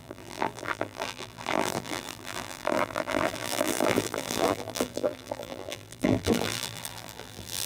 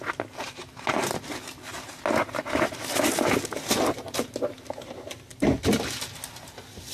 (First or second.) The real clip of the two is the second